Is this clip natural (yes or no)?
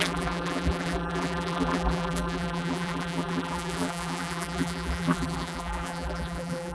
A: no